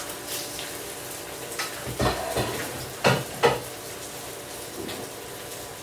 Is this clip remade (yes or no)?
no